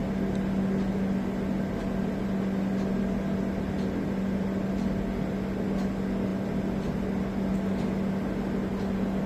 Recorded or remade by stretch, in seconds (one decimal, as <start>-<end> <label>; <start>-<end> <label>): 0.0-9.3 recorded